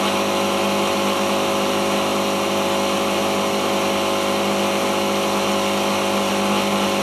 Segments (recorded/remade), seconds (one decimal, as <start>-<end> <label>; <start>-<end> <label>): 0.0-7.0 recorded